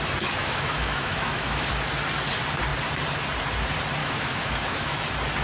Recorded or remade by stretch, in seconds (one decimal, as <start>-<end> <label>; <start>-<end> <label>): 0.0-0.4 recorded; 0.4-1.7 remade; 1.7-4.0 recorded; 4.0-5.0 remade; 5.0-5.4 recorded